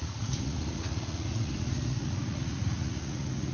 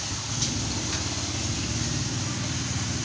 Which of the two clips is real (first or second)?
second